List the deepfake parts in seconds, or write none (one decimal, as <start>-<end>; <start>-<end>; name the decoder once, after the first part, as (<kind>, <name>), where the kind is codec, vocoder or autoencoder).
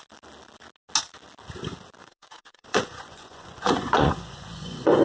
2.0-5.0 (vocoder, Vocos)